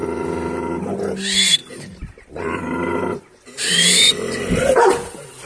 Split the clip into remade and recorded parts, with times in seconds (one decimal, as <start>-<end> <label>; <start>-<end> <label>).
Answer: 0.0-5.5 recorded